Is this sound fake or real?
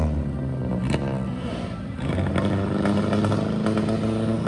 real